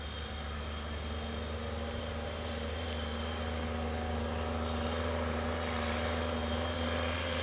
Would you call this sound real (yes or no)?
yes